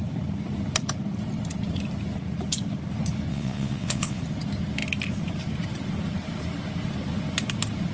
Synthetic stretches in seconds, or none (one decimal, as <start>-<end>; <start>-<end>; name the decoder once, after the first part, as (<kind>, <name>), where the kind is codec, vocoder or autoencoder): 3.3-4.2 (vocoder, WaveNeXt)